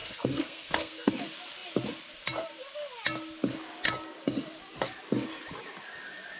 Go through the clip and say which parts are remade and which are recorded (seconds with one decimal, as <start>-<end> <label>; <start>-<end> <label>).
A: 0.0-1.1 remade; 1.1-6.4 recorded